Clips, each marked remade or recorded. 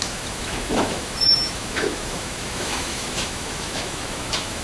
remade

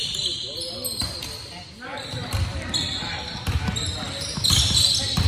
recorded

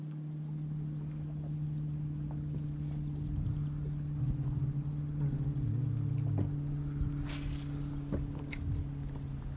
recorded